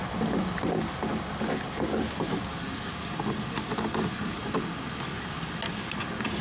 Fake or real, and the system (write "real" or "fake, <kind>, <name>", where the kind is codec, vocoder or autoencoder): real